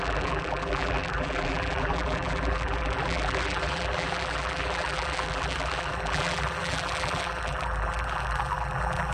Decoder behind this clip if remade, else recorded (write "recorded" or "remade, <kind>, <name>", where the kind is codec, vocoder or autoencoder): remade, vocoder, BigVGAN v2